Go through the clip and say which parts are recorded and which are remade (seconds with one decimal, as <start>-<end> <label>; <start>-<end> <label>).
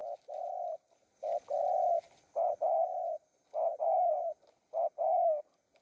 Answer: 0.0-5.8 recorded